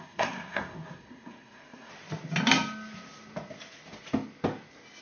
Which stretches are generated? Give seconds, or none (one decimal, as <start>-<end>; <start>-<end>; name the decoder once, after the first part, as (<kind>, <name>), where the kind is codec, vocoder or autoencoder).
0.0-1.9 (codec, SNAC)

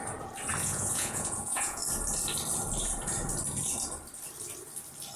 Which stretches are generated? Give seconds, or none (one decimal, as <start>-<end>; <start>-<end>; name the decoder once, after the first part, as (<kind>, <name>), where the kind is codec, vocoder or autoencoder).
0.6-1.8 (vocoder, Vocos)

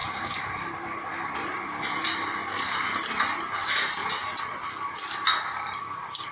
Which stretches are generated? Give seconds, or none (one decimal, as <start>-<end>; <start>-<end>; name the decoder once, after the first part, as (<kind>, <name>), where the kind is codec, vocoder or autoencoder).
0.0-1.1 (vocoder, BigVGAN v2)